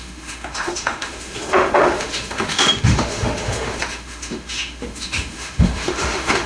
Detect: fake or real fake